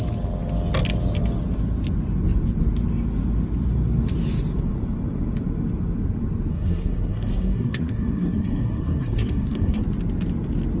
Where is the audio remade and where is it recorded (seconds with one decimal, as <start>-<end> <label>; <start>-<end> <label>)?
0.0-6.5 recorded; 6.5-9.8 remade; 9.8-10.8 recorded